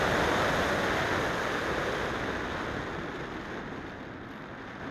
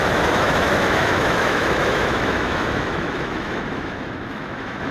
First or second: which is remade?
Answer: second